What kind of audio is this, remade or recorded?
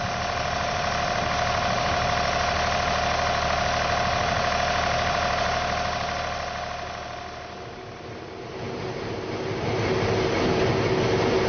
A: recorded